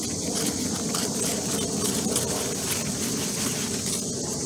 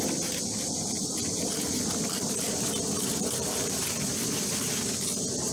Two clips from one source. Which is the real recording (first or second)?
first